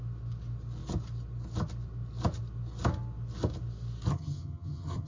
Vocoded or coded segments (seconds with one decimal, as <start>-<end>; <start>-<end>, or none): 4.1-5.1